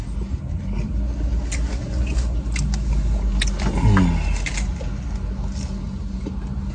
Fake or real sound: real